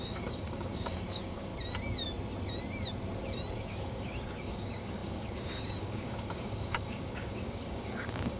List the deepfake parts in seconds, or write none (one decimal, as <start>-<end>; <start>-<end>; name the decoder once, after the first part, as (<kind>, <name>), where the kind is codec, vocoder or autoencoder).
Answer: 0.0-1.5 (codec, DAC); 3.5-8.4